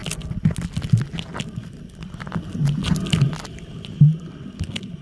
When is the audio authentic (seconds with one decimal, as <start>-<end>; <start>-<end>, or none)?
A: 0.0-5.0